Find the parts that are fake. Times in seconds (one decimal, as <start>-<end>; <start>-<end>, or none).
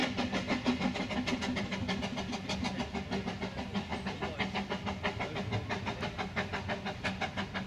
none